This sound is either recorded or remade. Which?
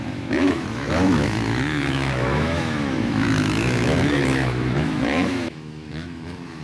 remade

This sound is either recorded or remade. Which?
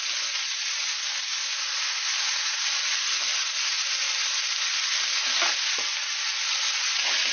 recorded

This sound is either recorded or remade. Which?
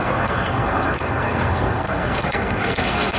remade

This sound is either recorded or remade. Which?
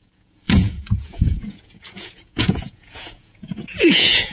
remade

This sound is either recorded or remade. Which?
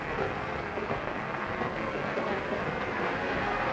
remade